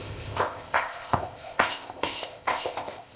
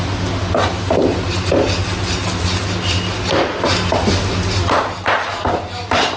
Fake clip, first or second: first